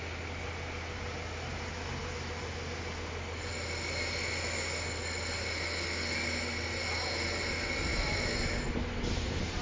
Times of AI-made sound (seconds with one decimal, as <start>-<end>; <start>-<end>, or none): none